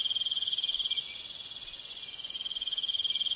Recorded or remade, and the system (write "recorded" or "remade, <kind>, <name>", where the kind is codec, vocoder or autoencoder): remade, vocoder, Vocos